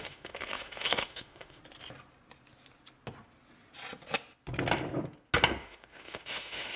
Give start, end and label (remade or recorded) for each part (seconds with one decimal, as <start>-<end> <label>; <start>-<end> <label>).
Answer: 0.0-1.6 remade; 1.6-5.6 recorded; 5.6-6.8 remade